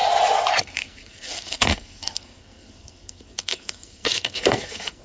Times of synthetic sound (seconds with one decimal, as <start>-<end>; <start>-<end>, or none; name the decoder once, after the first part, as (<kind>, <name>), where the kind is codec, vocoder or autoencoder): 0.6-5.0 (codec, SNAC)